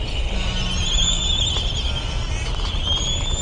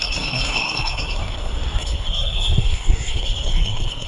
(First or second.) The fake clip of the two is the second